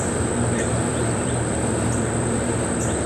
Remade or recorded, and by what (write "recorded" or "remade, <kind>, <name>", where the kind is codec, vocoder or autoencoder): remade, vocoder, BigVGAN v2